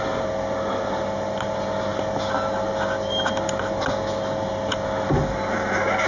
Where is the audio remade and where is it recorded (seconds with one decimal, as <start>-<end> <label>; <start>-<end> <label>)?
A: 0.0-6.1 recorded